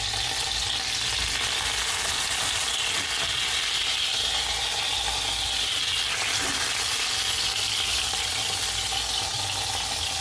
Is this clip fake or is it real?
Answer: real